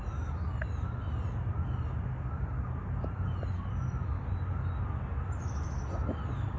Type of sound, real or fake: real